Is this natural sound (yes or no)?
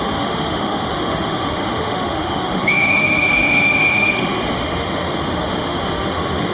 no